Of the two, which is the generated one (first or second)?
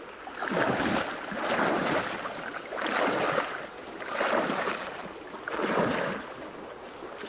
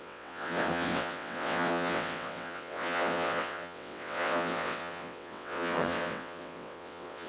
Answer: second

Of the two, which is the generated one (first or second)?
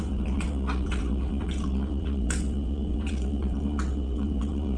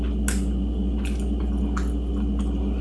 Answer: first